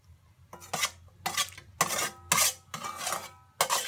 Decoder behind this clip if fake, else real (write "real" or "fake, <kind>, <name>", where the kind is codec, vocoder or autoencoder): real